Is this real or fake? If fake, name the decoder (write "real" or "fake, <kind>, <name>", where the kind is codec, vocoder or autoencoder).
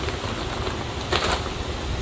real